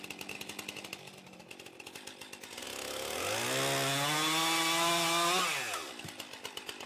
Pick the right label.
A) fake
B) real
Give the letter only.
B